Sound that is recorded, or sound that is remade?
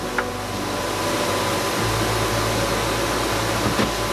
recorded